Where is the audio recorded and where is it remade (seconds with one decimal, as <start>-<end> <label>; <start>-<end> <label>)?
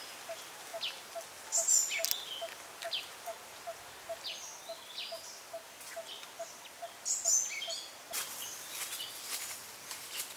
0.0-10.4 recorded